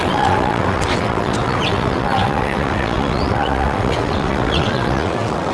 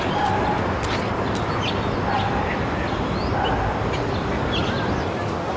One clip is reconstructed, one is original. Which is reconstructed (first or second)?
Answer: first